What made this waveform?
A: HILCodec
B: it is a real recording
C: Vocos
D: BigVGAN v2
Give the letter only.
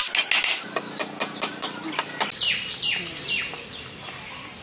B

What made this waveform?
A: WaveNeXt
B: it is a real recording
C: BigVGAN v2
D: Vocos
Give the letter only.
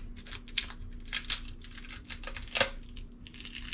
B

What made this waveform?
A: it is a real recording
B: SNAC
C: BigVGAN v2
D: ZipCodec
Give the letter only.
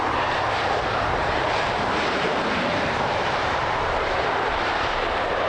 C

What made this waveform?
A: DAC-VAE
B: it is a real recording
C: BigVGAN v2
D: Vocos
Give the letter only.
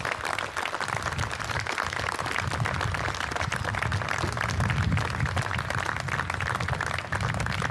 B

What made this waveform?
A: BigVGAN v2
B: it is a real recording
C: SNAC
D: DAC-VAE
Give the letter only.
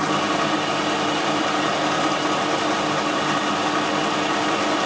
B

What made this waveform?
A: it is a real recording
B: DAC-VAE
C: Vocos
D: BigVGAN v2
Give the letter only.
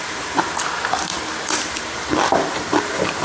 D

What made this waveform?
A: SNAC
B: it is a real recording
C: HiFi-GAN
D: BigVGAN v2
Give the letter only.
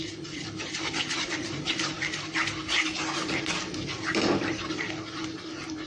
D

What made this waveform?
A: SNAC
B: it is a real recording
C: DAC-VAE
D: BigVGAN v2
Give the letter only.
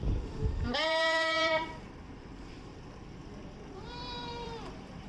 D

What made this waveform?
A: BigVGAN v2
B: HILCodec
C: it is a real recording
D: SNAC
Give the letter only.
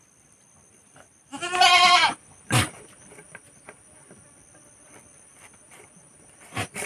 A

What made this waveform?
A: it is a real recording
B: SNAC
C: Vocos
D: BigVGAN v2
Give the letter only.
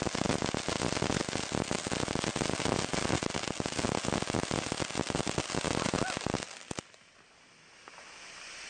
A